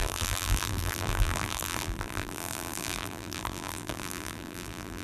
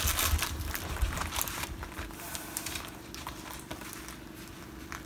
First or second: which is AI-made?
first